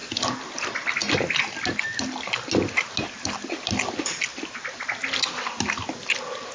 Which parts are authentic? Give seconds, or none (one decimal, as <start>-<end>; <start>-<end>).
0.0-6.5